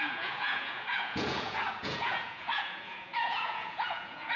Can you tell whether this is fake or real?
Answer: fake